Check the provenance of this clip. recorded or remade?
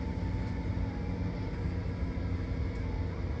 recorded